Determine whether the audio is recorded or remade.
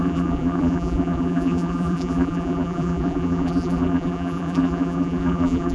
remade